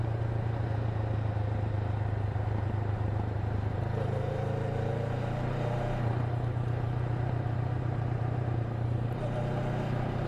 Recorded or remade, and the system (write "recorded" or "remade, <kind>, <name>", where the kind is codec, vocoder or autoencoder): remade, vocoder, BigVGAN v2